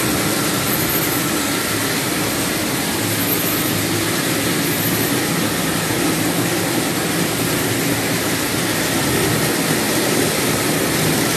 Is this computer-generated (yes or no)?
no